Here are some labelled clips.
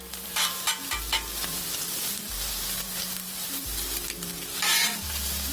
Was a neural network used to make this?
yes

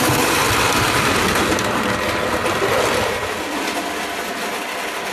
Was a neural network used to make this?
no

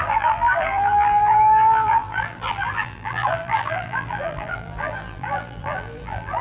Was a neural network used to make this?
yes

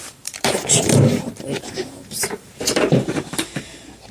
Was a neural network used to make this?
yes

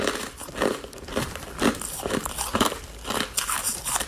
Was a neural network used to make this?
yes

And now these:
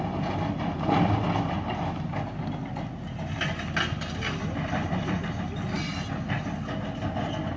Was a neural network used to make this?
no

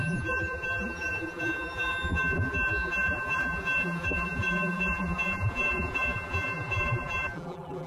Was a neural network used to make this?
yes